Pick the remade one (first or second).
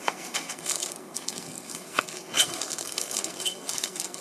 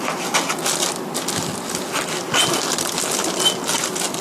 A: first